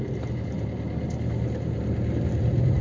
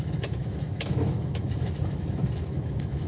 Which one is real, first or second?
first